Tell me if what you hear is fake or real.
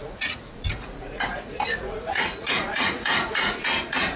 fake